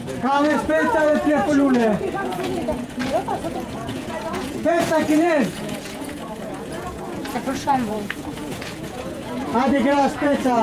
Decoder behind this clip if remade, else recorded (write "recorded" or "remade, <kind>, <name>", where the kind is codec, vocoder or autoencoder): remade, vocoder, Vocos